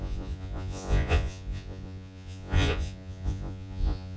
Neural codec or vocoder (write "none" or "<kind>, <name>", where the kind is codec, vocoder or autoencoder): vocoder, Vocos